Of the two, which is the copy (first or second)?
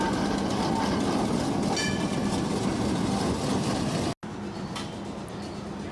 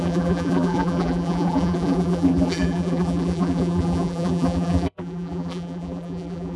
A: second